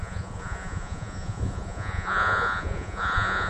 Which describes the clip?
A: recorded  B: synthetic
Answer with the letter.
B